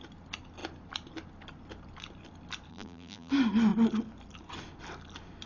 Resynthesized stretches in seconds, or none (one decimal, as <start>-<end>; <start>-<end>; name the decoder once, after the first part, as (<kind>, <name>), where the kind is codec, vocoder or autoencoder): 2.7-3.3 (vocoder, BigVGAN v2)